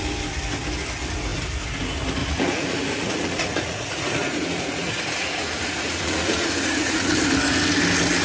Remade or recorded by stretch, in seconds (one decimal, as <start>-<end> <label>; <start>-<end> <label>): 0.0-2.2 recorded; 2.2-7.1 remade; 7.1-8.2 recorded